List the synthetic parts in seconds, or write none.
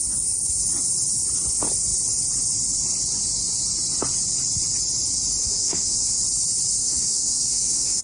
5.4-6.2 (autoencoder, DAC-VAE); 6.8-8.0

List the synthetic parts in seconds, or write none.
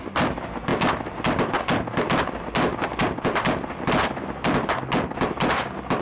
none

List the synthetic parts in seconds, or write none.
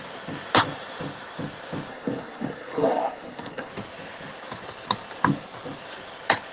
1.9-3.7 (codec, SNAC)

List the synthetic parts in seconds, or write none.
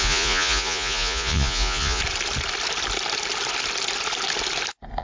0.0-2.0 (vocoder, Vocos)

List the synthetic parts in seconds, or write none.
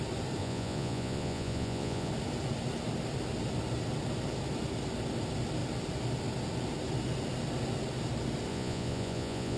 0.4-2.1 (vocoder, Vocos); 8.5-9.6